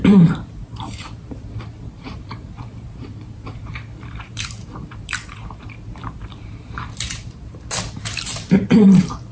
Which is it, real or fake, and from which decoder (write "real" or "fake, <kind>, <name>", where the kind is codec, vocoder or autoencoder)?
fake, vocoder, BigVGAN v2